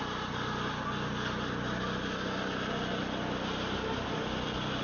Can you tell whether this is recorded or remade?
recorded